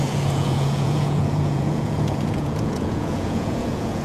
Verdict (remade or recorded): remade